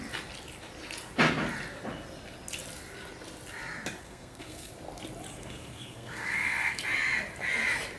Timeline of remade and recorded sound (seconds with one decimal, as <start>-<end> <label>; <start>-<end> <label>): 0.0-4.0 recorded; 4.0-4.7 remade; 4.7-5.3 recorded; 5.3-6.8 remade; 6.8-8.0 recorded

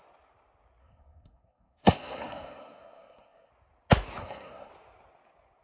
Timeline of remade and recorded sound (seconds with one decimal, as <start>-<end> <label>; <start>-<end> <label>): 0.0-0.8 recorded; 0.8-3.5 remade; 3.5-4.2 recorded; 4.2-4.7 remade; 4.7-5.6 recorded

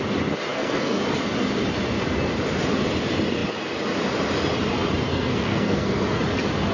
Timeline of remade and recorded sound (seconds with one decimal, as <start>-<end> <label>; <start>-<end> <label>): 0.0-0.5 recorded; 0.5-1.0 remade; 1.0-5.1 recorded; 5.1-6.2 remade; 6.2-6.7 recorded

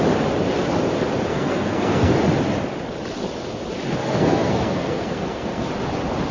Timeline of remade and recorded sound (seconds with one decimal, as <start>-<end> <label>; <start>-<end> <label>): 0.0-1.3 recorded; 1.3-2.1 remade; 2.1-4.0 recorded; 4.0-5.7 remade; 5.7-6.3 recorded